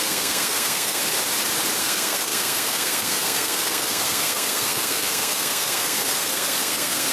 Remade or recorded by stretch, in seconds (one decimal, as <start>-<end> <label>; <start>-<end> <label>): 0.0-1.0 remade; 1.0-1.8 recorded; 1.8-7.1 remade